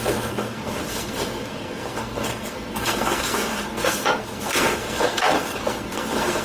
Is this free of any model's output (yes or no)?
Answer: no